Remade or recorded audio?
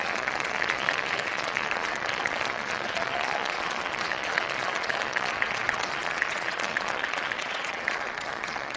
remade